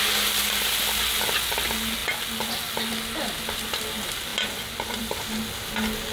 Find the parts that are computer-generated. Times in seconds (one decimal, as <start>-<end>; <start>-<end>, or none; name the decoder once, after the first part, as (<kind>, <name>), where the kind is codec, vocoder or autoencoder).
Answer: none